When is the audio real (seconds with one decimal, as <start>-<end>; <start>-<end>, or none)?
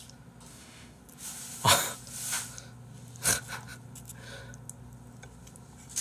0.0-0.5; 1.0-6.0